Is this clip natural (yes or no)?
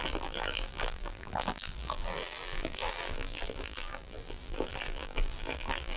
no